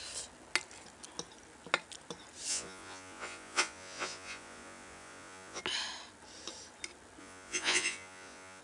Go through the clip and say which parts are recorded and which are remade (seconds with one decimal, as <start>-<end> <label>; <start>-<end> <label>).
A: 0.0-2.5 recorded; 2.5-5.6 remade; 5.6-7.2 recorded; 7.2-8.6 remade